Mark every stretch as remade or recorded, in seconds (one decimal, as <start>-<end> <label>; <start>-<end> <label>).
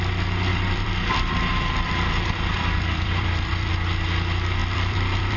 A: 0.0-0.5 recorded; 0.5-3.7 remade; 3.7-4.6 recorded; 4.6-5.4 remade